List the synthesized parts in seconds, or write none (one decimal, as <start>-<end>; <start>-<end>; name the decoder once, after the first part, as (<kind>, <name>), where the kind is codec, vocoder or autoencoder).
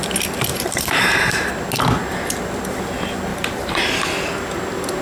0.5-1.5 (vocoder, BigVGAN v2); 3.3-4.0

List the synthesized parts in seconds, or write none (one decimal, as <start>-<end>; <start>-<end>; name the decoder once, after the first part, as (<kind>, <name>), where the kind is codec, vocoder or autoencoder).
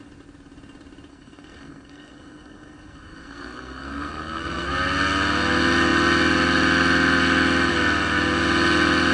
1.1-4.7 (codec, SNAC)